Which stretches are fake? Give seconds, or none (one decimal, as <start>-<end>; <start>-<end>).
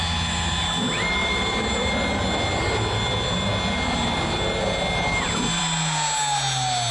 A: 1.2-1.9